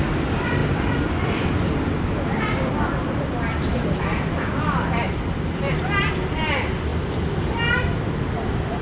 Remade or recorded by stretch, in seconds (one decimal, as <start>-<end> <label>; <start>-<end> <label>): 0.0-6.9 remade; 6.9-7.5 recorded; 7.5-8.8 remade